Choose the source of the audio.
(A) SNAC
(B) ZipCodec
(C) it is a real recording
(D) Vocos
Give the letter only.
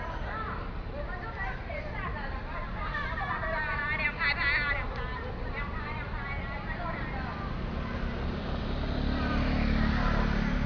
C